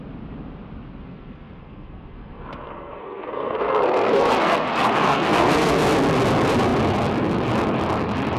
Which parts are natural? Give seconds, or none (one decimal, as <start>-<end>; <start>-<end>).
0.0-1.0; 5.8-8.4